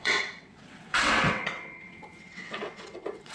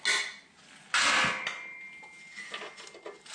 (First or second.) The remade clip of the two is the first